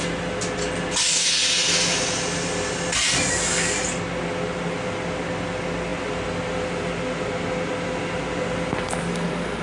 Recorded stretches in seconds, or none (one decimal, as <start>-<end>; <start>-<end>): 0.0-9.6